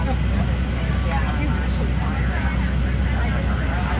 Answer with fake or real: real